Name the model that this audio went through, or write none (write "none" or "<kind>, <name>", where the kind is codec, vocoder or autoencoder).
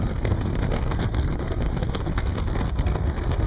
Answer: codec, SNAC